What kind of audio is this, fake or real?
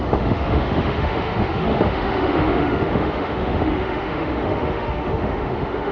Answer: fake